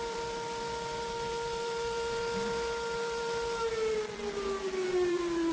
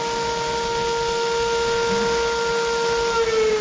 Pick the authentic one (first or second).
second